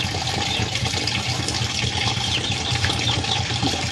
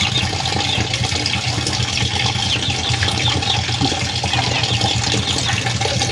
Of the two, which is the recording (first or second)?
second